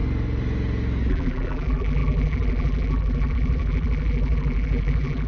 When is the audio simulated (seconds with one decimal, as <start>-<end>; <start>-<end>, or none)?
1.1-5.3